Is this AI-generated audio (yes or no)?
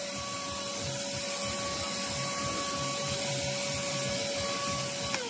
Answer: no